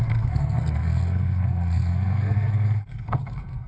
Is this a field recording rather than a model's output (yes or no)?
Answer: no